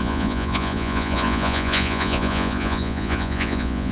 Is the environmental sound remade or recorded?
remade